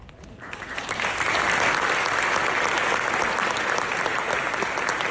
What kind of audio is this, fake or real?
real